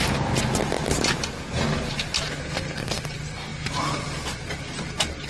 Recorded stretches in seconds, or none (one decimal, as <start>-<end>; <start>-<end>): 0.0-2.4; 3.0-5.3